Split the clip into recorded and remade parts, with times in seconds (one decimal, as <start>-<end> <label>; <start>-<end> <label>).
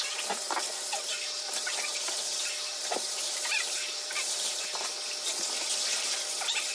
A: 0.0-1.1 recorded; 1.1-5.1 remade; 5.1-6.7 recorded